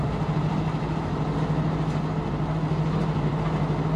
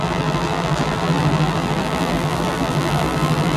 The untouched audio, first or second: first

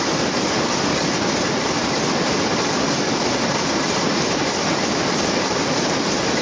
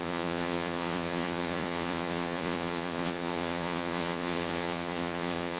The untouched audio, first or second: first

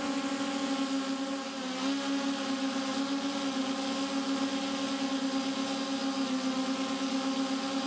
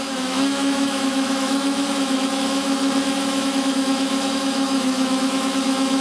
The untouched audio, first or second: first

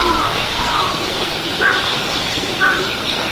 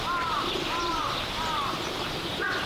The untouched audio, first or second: second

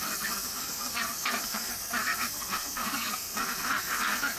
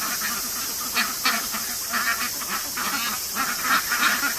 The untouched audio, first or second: second